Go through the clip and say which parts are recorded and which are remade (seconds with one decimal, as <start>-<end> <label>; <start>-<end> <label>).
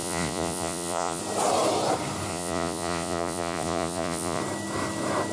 0.0-1.2 remade; 1.2-2.3 recorded; 2.3-4.4 remade; 4.4-5.3 recorded